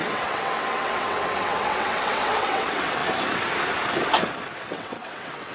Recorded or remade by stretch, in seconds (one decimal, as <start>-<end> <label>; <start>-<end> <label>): 0.0-3.0 remade; 3.0-4.6 recorded; 4.6-5.5 remade